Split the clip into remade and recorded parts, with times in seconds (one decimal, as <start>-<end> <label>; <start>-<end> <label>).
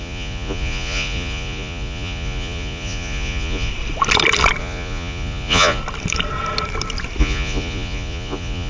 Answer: 0.0-3.7 remade; 3.7-4.6 recorded; 4.6-5.8 remade; 5.8-7.2 recorded; 7.2-8.7 remade